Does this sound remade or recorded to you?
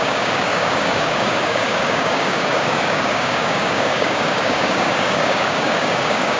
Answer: remade